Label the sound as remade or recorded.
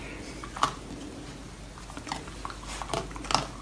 recorded